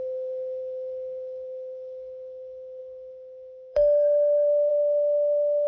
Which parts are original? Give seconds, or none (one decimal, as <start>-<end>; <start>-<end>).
none